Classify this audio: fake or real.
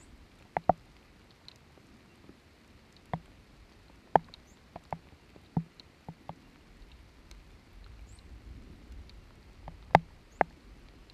real